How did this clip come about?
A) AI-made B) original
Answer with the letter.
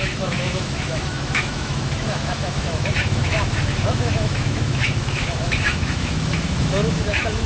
A